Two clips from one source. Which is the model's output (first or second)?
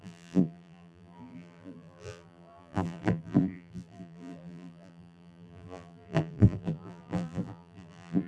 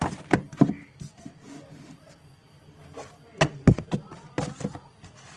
first